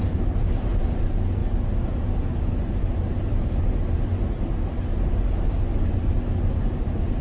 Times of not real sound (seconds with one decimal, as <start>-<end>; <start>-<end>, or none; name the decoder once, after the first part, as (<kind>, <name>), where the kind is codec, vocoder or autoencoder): none